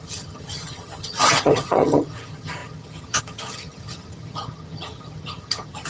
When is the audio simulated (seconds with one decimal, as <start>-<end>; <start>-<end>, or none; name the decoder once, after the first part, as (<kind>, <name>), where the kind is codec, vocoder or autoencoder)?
0.0-5.9 (vocoder, HiFi-GAN)

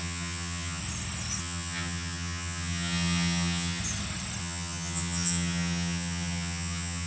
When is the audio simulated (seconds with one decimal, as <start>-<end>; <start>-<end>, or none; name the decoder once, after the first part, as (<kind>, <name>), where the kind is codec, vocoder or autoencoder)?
0.0-0.8 (vocoder, HiFi-GAN); 1.4-3.8; 4.4-7.1

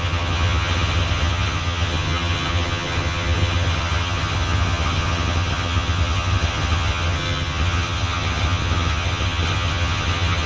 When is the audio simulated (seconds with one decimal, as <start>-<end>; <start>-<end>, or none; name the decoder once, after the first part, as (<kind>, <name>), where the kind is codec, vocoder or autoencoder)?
0.0-10.5 (vocoder, HiFi-GAN)

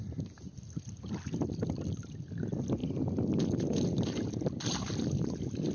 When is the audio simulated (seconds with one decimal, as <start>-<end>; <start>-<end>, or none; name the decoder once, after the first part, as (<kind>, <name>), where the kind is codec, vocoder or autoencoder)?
none

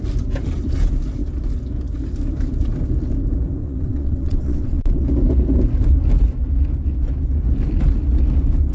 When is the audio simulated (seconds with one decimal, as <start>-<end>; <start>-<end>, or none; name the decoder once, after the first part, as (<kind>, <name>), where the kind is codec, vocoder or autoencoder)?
3.6-5.0 (vocoder, WaveNeXt)

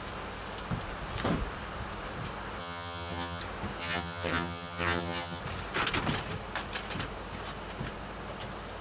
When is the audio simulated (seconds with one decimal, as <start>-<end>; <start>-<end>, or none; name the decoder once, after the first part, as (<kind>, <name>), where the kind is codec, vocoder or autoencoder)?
2.6-3.4 (vocoder, HiFi-GAN); 3.8-5.4

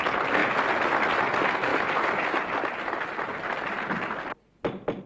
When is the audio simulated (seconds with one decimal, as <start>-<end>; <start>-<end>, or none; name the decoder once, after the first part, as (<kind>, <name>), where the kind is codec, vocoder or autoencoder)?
none